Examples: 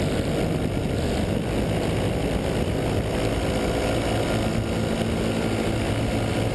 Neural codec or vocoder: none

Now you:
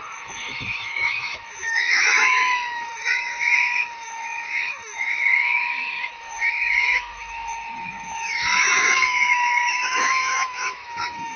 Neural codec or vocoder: autoencoder, DAC-VAE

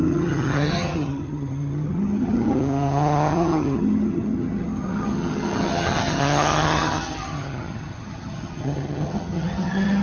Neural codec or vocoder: vocoder, HiFi-GAN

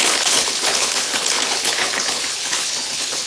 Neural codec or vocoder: codec, HILCodec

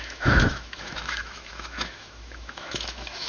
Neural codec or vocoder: autoencoder, DAC-VAE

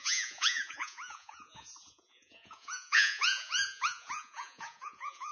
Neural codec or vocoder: vocoder, Vocos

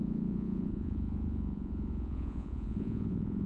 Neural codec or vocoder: vocoder, Vocos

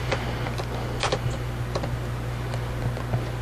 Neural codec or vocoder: none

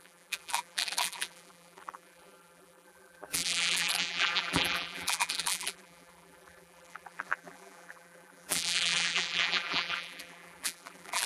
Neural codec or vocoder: vocoder, BigVGAN v2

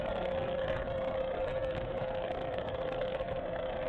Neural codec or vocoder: codec, SNAC